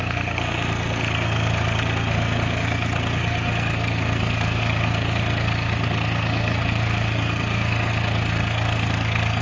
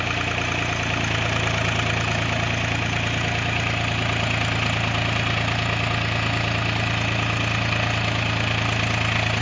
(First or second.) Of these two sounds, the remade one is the first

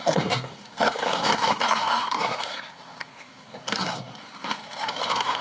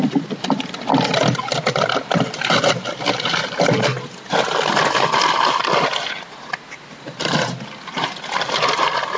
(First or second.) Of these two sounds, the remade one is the first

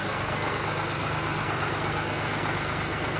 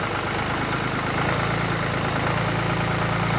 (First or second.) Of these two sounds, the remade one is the first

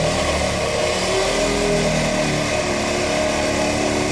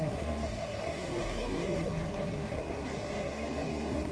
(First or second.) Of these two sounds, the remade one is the second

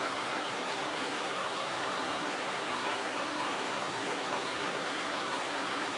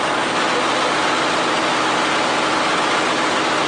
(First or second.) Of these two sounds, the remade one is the first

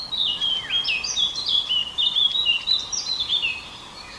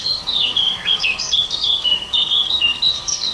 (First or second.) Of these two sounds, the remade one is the second